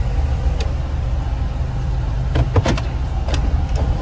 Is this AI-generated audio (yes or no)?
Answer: no